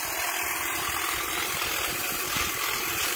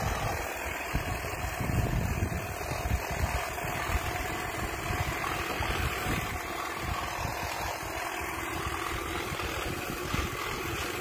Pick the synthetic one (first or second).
first